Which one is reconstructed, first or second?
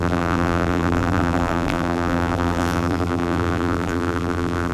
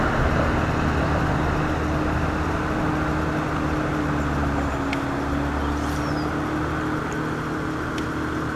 first